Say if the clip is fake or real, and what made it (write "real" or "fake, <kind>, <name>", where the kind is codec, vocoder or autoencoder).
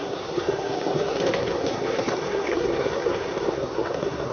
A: fake, codec, SNAC